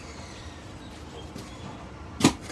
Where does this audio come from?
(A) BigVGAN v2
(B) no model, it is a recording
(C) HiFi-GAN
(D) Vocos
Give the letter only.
A